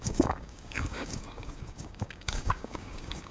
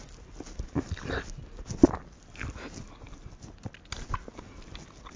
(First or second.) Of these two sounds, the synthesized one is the first